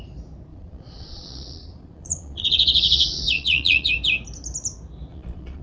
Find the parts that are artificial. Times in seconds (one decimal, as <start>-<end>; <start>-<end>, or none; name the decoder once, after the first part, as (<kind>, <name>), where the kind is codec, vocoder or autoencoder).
0.5-3.9 (vocoder, Vocos); 5.1-5.6